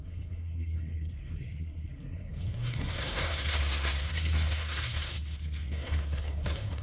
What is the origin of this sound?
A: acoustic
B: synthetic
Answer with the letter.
B